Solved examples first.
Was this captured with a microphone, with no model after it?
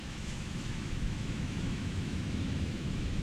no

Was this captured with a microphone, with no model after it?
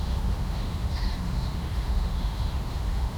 no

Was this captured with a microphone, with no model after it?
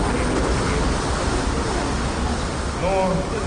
yes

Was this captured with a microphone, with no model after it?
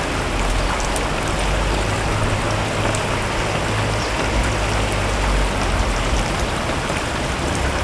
yes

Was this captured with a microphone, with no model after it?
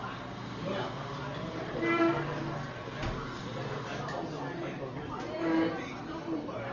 yes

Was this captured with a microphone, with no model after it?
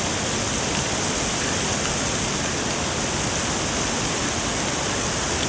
yes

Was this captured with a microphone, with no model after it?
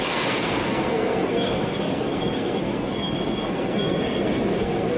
no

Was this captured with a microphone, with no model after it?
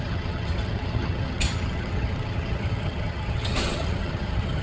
no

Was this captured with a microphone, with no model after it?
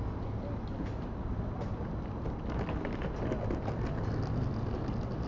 yes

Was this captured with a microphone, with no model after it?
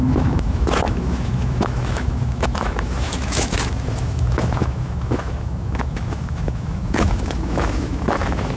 no